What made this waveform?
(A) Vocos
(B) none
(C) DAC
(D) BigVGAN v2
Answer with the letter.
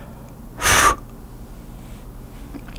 B